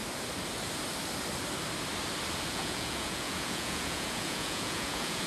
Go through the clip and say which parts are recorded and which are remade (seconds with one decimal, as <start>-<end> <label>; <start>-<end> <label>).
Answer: 0.0-2.4 recorded; 2.4-5.3 remade